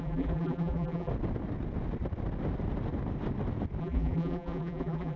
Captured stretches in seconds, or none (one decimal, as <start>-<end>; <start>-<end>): 1.1-3.8